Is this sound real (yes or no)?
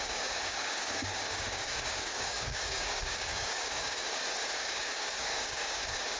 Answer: no